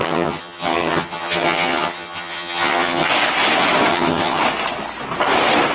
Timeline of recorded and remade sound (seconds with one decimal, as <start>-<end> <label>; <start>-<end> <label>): 0.0-3.1 remade; 3.1-3.9 recorded; 3.9-4.4 remade; 4.4-5.7 recorded

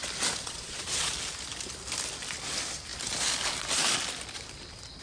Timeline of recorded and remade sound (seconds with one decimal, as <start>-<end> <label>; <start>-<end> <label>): 0.0-0.4 recorded; 0.4-1.1 remade; 1.1-5.0 recorded